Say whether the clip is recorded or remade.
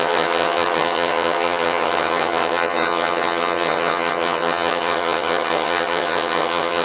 remade